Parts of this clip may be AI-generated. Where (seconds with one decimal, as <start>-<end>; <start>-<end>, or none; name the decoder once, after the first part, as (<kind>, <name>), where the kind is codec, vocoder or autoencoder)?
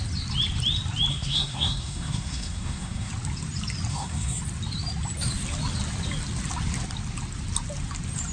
1.1-3.1 (codec, SNAC); 3.9-4.4